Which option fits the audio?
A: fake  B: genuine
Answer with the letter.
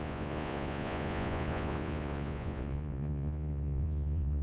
A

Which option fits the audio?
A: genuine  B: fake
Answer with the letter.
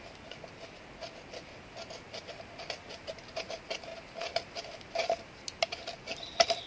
A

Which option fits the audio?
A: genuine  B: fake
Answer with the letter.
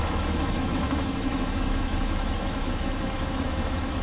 B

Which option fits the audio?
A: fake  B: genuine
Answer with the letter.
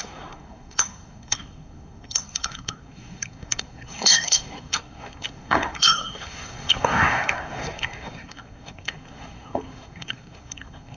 A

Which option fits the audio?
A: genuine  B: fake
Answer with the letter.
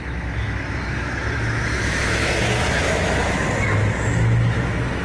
B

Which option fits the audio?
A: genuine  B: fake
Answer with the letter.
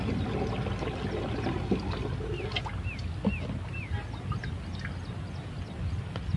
A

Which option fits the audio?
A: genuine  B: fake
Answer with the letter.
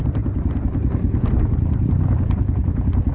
A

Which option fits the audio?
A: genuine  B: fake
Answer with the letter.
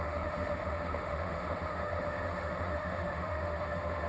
B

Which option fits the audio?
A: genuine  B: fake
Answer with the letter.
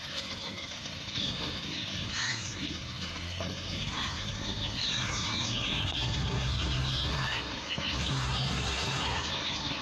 B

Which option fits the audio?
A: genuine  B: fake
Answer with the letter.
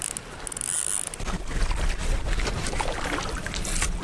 A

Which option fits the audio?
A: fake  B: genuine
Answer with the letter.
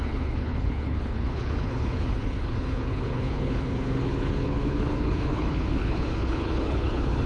A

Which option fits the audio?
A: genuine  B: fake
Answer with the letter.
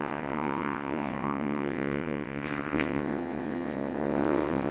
B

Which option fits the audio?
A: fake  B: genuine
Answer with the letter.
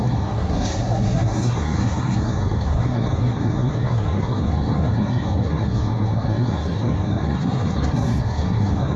A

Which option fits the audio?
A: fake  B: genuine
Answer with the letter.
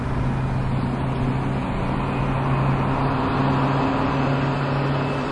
B